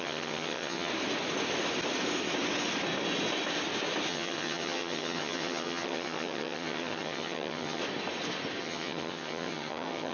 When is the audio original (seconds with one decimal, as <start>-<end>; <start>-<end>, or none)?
0.9-4.1; 7.8-8.6